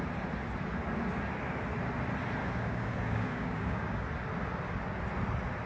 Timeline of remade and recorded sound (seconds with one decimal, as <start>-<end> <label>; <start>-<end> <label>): 0.0-2.4 recorded; 2.4-4.0 remade; 4.0-5.7 recorded